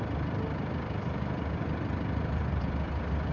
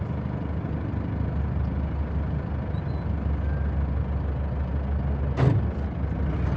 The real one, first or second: second